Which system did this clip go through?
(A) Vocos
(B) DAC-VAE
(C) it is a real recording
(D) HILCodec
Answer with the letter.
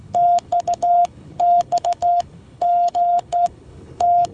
D